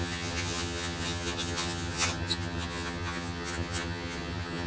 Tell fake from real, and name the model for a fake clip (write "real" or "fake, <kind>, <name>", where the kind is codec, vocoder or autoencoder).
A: fake, vocoder, HiFi-GAN